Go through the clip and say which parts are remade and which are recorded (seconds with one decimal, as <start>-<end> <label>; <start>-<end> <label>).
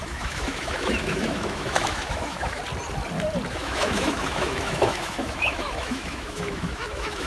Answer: 0.0-2.6 remade; 2.6-3.5 recorded; 3.5-7.3 remade